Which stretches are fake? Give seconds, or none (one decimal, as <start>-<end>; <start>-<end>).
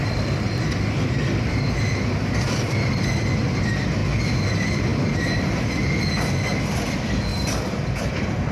0.0-4.0; 4.5-8.5